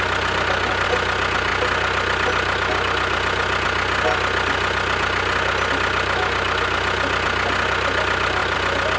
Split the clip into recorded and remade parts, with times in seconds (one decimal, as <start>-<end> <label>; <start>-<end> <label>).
0.0-9.0 recorded